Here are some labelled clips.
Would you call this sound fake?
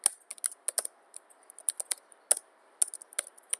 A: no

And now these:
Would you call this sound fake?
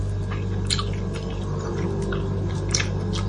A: no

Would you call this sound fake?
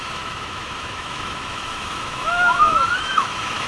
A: yes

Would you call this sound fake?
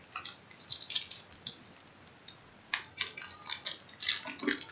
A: no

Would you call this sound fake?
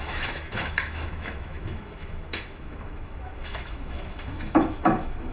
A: yes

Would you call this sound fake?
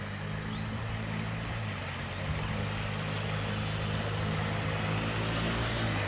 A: no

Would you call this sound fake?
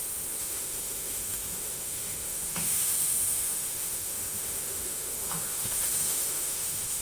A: yes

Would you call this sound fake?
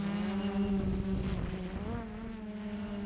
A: no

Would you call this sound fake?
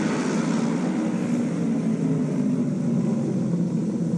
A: no